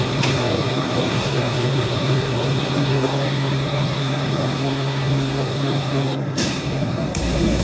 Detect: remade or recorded remade